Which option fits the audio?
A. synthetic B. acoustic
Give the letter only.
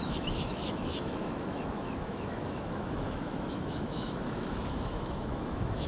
A